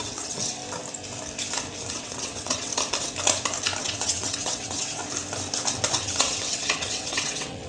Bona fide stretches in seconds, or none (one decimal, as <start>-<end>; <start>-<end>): 0.6-1.9; 2.7-3.8; 5.0-5.9